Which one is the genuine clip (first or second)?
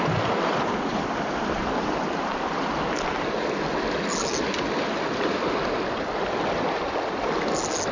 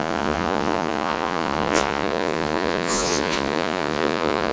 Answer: first